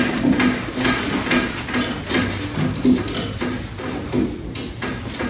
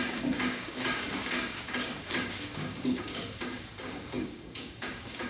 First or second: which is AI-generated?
second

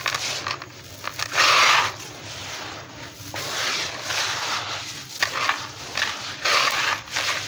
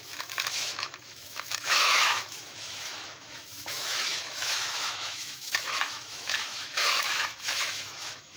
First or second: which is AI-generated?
second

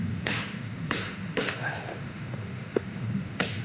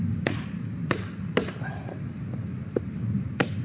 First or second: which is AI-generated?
first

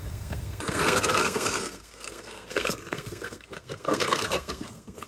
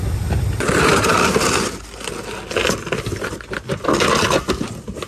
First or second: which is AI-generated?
first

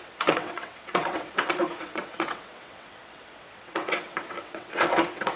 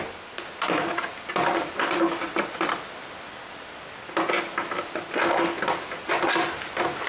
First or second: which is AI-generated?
first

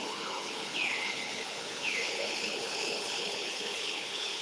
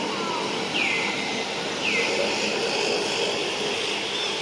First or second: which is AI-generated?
first